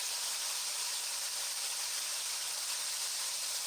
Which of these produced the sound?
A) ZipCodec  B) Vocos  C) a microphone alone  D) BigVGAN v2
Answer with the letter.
D